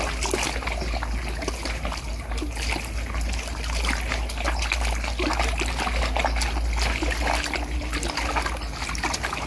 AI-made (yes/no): no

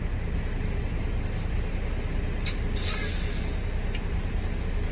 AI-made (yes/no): no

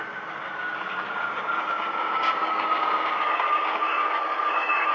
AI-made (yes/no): yes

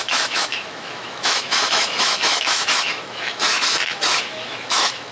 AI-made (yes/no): yes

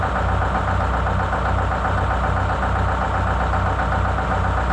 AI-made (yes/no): no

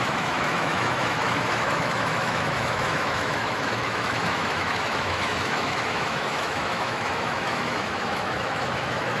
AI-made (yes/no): yes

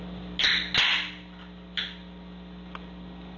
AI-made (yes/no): no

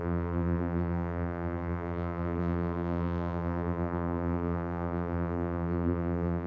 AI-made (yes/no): yes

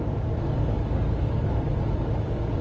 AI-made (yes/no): yes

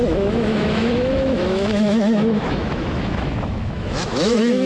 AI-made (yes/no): yes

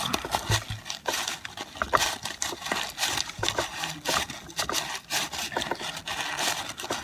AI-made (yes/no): no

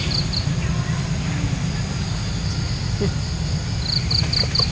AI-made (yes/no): no